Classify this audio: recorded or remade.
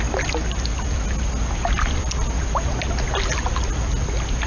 recorded